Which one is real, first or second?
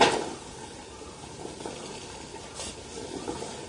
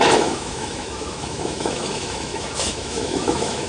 first